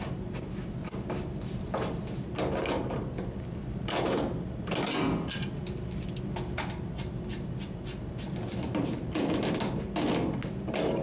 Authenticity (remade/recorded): recorded